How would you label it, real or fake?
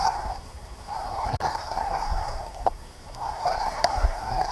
fake